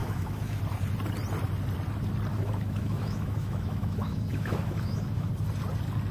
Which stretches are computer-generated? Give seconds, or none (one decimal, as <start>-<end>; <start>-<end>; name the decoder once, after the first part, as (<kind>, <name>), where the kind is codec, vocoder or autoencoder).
0.0-0.6 (autoencoder, DAC-VAE); 2.3-5.3